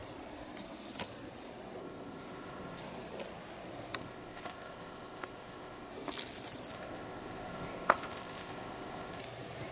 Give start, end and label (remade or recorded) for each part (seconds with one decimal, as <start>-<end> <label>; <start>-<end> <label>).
0.0-1.8 recorded; 1.8-2.8 remade; 2.8-4.0 recorded; 4.0-5.9 remade; 5.9-6.7 recorded; 6.7-9.2 remade; 9.2-9.7 recorded